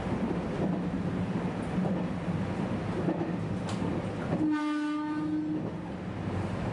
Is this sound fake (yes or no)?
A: no